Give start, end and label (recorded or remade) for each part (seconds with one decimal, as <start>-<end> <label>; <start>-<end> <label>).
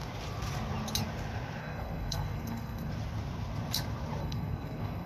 0.0-1.6 recorded; 1.6-2.9 remade; 2.9-4.2 recorded; 4.2-5.1 remade